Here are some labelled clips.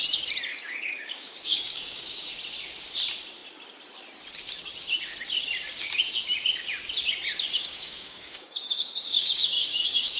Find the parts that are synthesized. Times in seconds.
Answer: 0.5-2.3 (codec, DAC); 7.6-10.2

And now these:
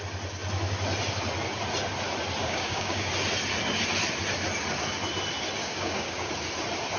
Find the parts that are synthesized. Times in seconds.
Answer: 2.4-3.1 (codec, DAC); 5.6-6.3

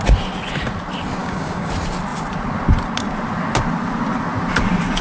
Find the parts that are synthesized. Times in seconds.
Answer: 1.2-1.7 (codec, DAC)

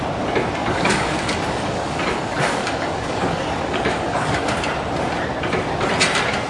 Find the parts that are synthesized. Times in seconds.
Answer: 0.6-4.5 (codec, DAC)

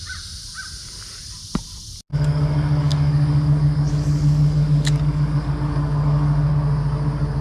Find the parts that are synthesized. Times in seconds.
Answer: 2.1-6.5 (codec, DAC)

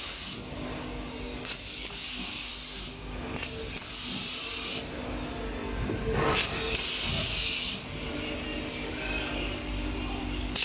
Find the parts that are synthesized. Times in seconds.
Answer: 0.0-2.5 (codec, DAC); 7.1-8.1; 8.7-9.6; 10.2-10.6